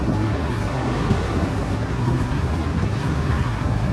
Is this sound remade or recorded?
remade